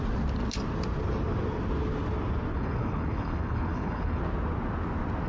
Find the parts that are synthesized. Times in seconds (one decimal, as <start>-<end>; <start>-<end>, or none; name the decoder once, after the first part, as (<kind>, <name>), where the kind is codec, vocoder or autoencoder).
2.5-4.2 (codec, HILCodec)